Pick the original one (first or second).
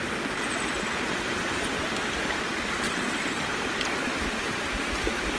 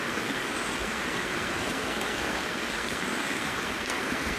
first